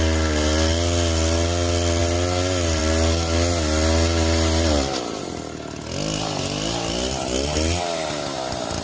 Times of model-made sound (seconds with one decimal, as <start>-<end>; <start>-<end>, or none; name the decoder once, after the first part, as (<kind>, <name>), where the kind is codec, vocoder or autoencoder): none